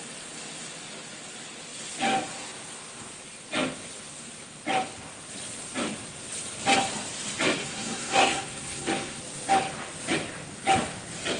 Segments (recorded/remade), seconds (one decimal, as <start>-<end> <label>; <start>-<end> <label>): 0.0-7.6 recorded; 7.6-9.2 remade; 9.2-11.4 recorded